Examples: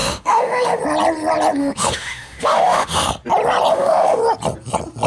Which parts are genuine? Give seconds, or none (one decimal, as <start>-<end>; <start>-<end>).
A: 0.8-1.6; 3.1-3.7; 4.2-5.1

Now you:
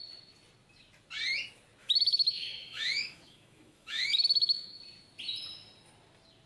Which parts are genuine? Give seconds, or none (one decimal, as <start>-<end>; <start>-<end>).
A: 0.0-1.8; 4.8-6.5

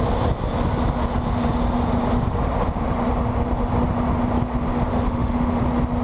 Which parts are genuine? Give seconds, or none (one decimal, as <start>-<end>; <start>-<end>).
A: 0.0-4.9; 5.6-6.0

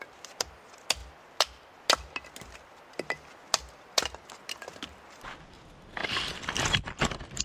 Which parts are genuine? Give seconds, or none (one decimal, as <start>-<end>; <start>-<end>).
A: 0.0-7.4

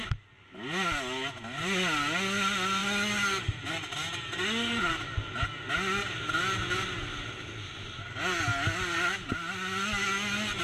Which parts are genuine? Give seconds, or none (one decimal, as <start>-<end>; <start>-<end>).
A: 0.0-10.6